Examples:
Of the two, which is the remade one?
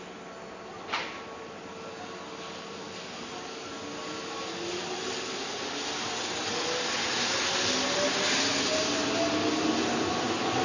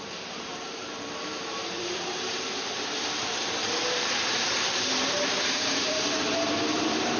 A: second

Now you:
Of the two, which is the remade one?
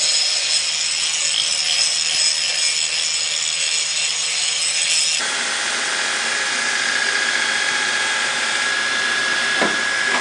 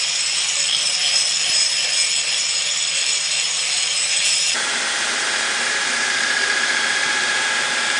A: second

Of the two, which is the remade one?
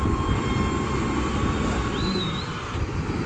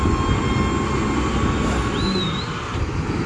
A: first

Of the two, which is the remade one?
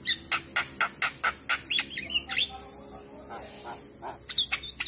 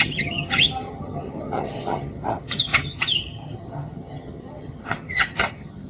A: second